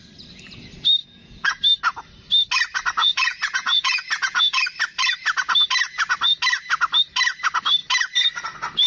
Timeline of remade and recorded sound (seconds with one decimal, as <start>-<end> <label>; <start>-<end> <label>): 0.0-1.0 recorded; 1.0-1.6 remade; 1.6-3.0 recorded; 3.0-4.6 remade; 4.6-8.9 recorded